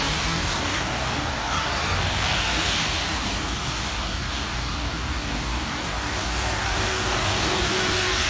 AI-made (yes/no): yes